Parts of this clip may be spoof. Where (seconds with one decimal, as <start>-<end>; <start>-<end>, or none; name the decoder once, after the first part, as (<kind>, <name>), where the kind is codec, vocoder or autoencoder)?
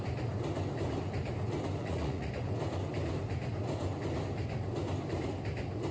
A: 1.8-2.3 (vocoder, Vocos)